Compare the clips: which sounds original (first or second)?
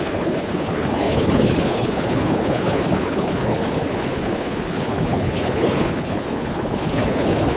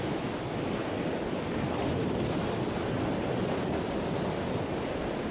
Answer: second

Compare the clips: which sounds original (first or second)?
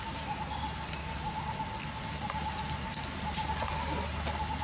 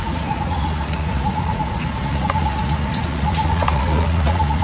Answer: first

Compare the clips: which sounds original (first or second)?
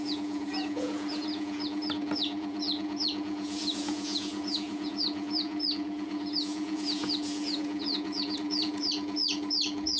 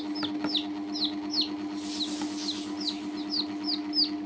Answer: second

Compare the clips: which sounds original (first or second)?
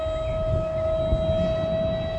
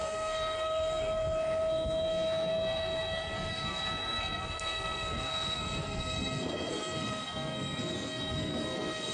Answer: first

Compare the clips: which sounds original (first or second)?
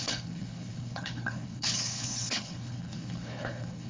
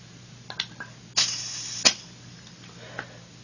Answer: second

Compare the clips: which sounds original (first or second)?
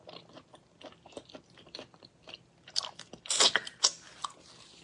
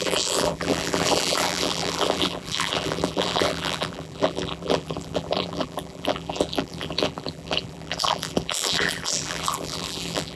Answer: first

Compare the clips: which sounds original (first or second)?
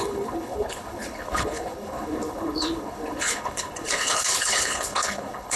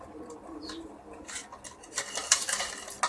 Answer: second